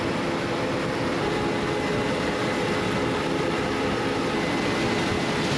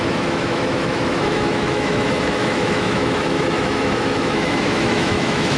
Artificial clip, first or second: second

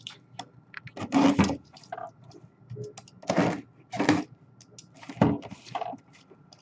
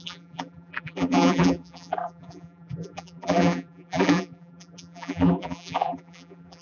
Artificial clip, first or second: second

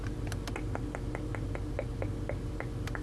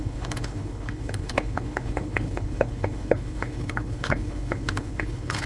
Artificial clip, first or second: second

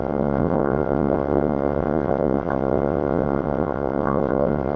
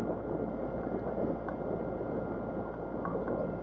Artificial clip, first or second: first